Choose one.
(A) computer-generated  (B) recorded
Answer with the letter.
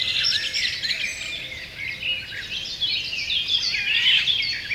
B